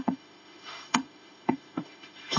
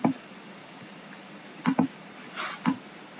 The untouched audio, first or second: second